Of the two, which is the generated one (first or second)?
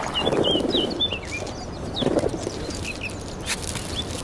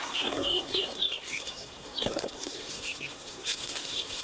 second